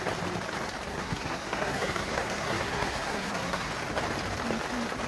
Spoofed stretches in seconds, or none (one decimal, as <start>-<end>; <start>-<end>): 0.9-3.7